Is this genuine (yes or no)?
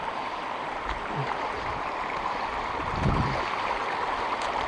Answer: yes